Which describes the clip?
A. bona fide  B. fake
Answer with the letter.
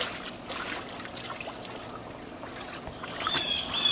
A